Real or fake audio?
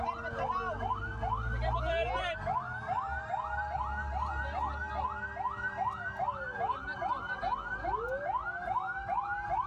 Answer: real